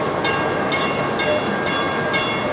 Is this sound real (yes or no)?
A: yes